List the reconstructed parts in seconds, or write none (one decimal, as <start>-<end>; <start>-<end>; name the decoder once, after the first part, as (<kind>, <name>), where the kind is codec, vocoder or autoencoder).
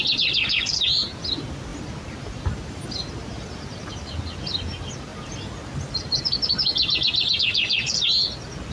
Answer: none